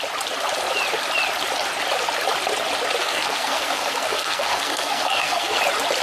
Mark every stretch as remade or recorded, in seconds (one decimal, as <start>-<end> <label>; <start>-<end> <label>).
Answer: 0.0-3.0 recorded; 3.0-5.6 remade; 5.6-6.0 recorded

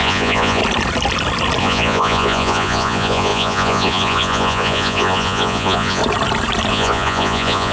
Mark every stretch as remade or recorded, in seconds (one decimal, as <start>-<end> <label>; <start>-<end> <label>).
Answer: 0.0-0.6 remade; 0.6-1.6 recorded; 1.6-6.0 remade; 6.0-6.7 recorded; 6.7-7.7 remade

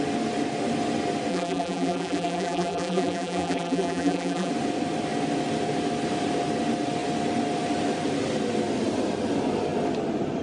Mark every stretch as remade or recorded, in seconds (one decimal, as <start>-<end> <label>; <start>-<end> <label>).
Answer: 0.0-1.3 recorded; 1.3-4.5 remade; 4.5-10.4 recorded